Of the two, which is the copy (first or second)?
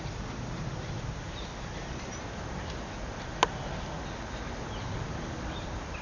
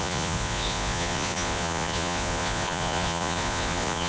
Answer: second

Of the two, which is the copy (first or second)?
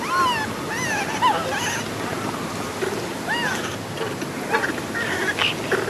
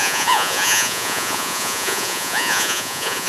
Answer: second